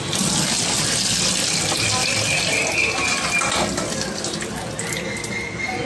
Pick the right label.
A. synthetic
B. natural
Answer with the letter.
B